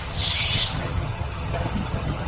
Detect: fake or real fake